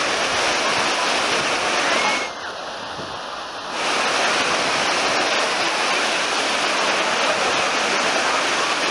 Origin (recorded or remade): recorded